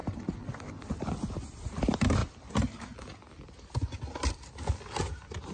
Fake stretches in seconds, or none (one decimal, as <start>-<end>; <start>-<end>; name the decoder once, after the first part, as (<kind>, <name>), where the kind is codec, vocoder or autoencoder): none